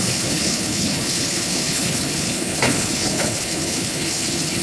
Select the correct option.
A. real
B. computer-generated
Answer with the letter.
B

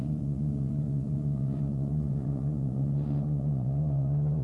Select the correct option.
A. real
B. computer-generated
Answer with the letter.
B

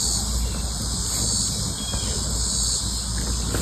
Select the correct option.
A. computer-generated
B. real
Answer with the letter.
B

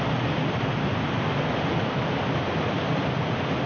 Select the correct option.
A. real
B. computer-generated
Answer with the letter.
A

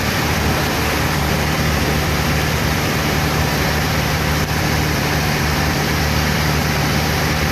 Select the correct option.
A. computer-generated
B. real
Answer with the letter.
A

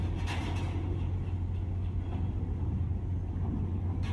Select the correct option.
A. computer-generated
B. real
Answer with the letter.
B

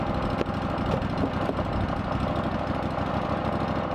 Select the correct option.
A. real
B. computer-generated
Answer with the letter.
A